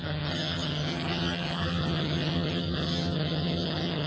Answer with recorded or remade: remade